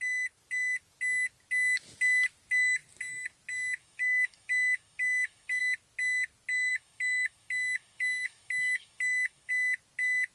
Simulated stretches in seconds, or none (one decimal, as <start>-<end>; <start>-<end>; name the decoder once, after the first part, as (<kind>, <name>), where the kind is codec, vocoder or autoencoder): 3.8-5.6 (autoencoder, DAC-VAE); 6.7-9.5